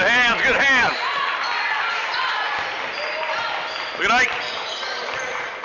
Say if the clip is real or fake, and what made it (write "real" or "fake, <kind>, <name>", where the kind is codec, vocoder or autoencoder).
real